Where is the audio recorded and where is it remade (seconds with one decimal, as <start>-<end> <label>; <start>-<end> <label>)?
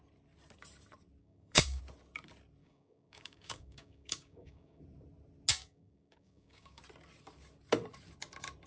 0.0-1.2 recorded; 1.2-1.8 remade; 1.8-2.6 recorded; 2.6-4.8 remade; 4.8-5.5 recorded; 5.5-6.8 remade; 6.8-8.7 recorded